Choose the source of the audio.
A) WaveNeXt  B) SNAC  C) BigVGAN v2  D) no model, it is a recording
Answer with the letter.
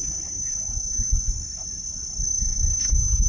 D